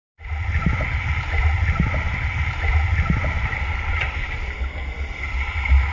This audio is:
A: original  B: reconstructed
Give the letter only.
A